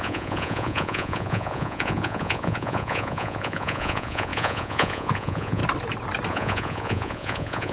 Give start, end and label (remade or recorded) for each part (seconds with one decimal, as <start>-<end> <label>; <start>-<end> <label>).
0.0-5.6 remade; 5.6-6.3 recorded; 6.3-7.7 remade